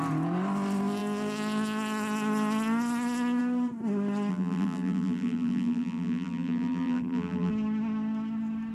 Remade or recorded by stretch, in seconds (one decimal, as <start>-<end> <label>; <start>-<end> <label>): 0.0-4.3 recorded; 4.3-7.5 remade; 7.5-8.7 recorded